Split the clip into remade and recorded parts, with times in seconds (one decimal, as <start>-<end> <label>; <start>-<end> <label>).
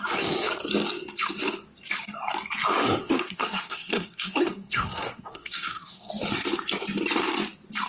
0.0-3.0 recorded; 3.0-6.1 remade; 6.1-7.9 recorded